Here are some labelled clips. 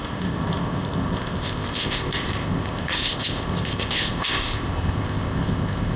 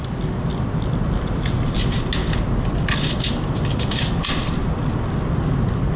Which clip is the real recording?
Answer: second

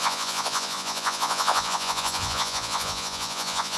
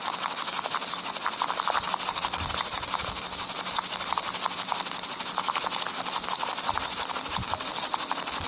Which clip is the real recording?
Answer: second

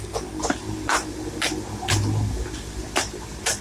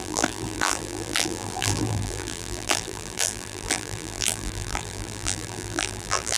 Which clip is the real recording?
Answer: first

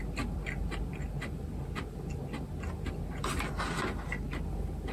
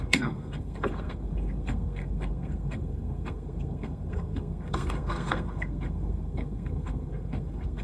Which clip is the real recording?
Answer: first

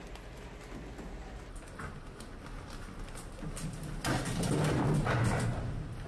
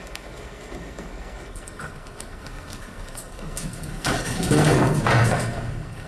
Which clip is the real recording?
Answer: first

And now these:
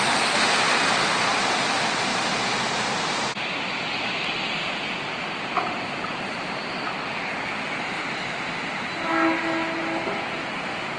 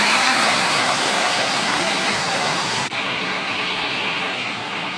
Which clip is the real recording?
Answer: first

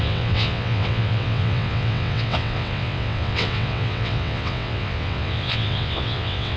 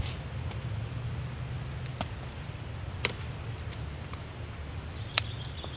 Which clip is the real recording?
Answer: second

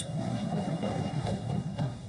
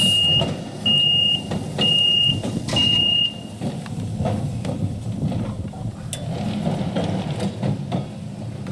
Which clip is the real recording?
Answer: second